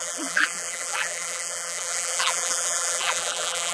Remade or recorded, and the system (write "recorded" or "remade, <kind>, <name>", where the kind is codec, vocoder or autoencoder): remade, vocoder, BigVGAN v2